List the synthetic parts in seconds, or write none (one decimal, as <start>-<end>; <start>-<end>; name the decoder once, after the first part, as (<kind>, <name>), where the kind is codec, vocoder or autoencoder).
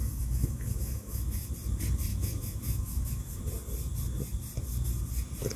0.0-1.5 (autoencoder, DAC-VAE); 2.1-3.4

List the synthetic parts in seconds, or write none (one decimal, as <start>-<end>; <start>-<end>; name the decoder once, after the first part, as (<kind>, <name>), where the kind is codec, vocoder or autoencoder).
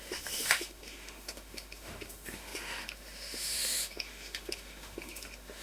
0.0-5.6 (autoencoder, DAC-VAE)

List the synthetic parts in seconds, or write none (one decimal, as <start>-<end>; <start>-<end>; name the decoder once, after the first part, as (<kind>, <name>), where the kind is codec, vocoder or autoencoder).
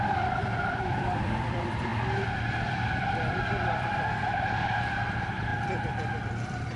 0.0-1.9 (vocoder, BigVGAN v2); 2.6-6.8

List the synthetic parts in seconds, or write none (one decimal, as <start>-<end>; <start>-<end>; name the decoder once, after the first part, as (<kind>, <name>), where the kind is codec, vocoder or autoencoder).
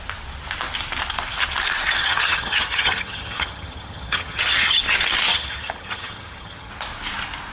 2.0-4.8 (vocoder, HiFi-GAN); 5.3-6.7